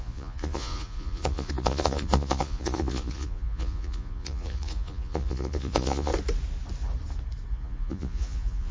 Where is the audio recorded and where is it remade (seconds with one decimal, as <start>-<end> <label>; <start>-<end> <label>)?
0.0-6.1 remade; 6.1-7.5 recorded; 7.5-8.7 remade